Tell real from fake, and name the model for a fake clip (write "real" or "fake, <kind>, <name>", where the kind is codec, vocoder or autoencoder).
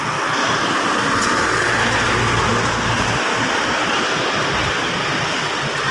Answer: real